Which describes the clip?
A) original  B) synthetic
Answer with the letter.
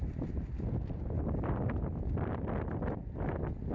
A